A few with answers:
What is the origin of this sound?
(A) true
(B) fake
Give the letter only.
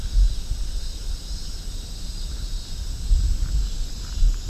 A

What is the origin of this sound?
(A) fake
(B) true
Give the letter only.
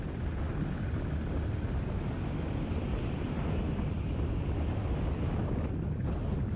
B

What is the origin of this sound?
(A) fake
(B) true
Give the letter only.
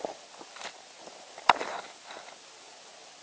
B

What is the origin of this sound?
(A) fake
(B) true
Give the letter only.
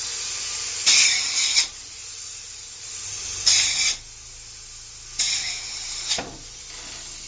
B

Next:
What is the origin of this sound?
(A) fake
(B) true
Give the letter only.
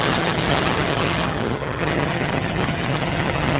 A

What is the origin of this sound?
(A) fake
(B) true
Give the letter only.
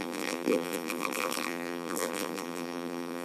A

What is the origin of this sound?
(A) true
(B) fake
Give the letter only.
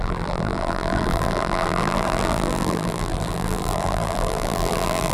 B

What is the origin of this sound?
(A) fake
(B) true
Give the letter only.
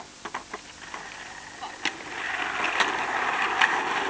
B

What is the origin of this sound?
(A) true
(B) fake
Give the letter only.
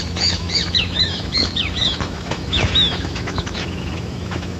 B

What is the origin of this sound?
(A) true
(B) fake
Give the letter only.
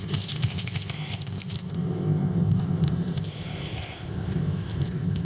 B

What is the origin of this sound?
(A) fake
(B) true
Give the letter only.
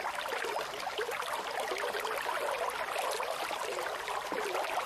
B